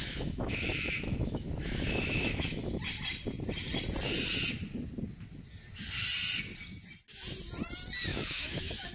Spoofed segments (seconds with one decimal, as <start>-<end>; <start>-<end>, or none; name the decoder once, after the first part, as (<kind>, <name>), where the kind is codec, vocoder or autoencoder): 0.0-2.8 (autoencoder, DAC-VAE); 8.1-8.9